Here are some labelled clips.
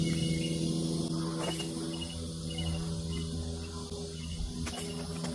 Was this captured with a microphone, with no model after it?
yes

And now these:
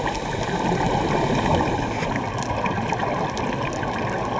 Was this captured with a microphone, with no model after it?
yes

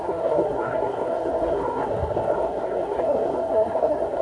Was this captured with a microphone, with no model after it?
no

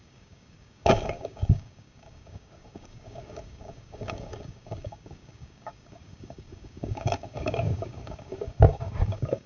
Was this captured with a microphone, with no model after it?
no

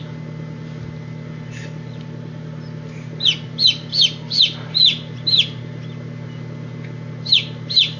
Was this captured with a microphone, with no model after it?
yes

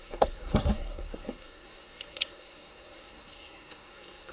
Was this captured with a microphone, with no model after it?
no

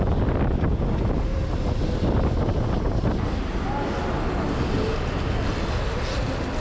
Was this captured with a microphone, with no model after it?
yes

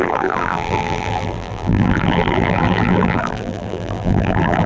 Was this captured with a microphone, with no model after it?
no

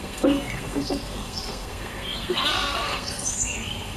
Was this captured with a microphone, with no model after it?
no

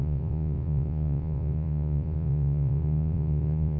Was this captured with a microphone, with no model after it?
no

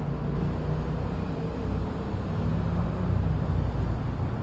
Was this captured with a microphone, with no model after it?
yes